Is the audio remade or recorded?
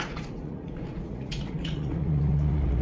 remade